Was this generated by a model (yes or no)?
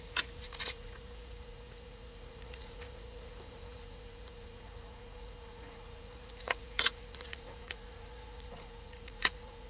yes